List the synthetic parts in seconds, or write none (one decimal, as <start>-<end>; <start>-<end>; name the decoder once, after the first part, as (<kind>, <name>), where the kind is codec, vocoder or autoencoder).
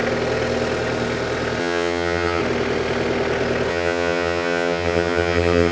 1.6-2.4 (vocoder, HiFi-GAN); 3.7-5.7